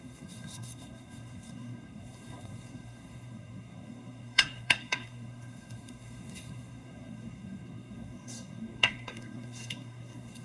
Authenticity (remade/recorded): remade